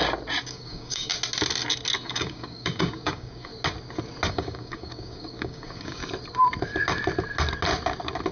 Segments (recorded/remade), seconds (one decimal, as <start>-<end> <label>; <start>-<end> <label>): 0.0-0.5 recorded; 0.5-1.1 remade; 1.1-2.1 recorded; 2.1-3.5 remade; 3.5-4.3 recorded; 4.3-6.0 remade; 6.0-8.3 recorded